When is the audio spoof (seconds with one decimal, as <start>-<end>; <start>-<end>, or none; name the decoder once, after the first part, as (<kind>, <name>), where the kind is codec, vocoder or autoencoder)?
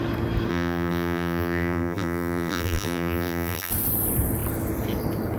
0.5-3.7 (vocoder, BigVGAN v2)